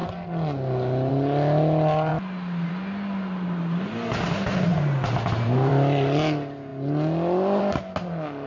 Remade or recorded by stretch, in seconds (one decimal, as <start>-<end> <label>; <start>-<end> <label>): 0.0-8.5 recorded